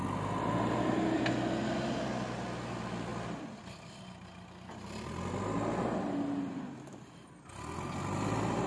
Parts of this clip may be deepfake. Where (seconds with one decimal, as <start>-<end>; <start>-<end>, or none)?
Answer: none